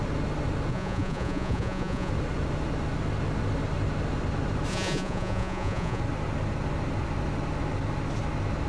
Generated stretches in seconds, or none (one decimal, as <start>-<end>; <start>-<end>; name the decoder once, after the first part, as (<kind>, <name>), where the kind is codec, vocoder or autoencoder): 0.7-2.1 (vocoder, Vocos); 4.7-6.0